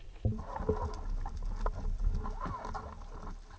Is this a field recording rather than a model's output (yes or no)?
yes